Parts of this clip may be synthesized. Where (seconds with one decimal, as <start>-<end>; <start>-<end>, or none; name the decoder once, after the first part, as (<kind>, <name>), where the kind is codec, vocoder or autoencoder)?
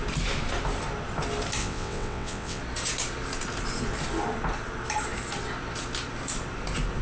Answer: 1.6-2.6 (vocoder, WaveNeXt)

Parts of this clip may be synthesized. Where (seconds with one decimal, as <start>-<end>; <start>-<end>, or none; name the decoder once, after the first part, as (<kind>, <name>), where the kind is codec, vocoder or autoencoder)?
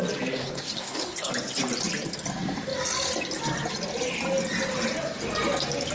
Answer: 0.4-1.3 (codec, HILCodec)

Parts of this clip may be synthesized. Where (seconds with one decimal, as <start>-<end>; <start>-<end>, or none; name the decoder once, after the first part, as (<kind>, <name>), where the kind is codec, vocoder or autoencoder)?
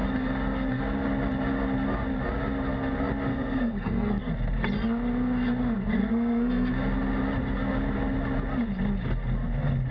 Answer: 3.3-4.2 (codec, SNAC); 6.0-6.7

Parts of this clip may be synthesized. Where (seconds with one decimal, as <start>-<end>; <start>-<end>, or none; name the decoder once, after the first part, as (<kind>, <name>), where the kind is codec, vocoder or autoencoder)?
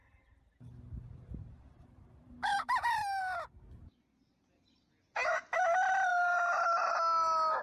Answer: 0.0-3.2 (vocoder, BigVGAN v2); 6.1-7.0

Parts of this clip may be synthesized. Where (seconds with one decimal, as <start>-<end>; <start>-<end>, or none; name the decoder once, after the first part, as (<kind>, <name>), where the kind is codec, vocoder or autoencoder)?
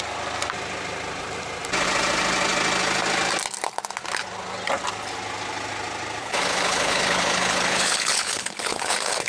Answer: 6.2-9.3 (codec, HILCodec)